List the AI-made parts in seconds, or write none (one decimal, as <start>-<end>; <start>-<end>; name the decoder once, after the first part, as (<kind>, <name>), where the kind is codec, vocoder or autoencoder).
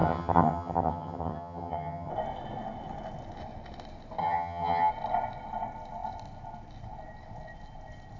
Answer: 0.0-2.1 (vocoder, HiFi-GAN); 4.2-4.9